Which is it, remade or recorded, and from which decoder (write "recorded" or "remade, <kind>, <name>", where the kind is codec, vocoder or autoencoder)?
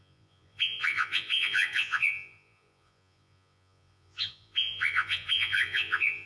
remade, vocoder, Vocos